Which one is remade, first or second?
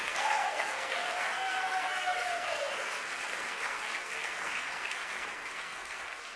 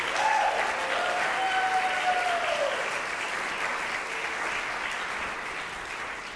first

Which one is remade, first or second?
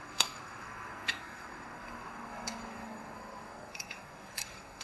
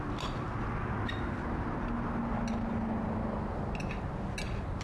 first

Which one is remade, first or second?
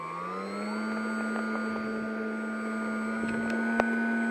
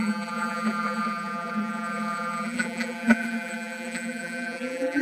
second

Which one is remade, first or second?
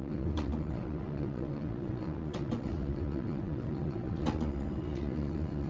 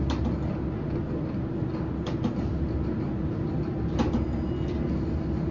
first